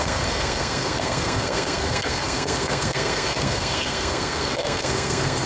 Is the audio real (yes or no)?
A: no